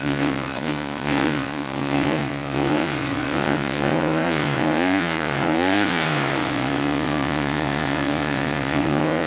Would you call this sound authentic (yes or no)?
no